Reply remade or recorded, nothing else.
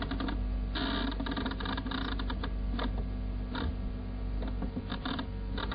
recorded